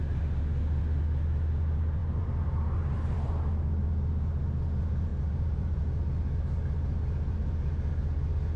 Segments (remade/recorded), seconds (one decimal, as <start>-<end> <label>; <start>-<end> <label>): 0.0-2.0 recorded; 2.0-3.3 remade; 3.3-5.1 recorded; 5.1-5.8 remade; 5.8-8.6 recorded